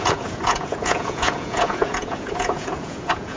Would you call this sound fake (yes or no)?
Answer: yes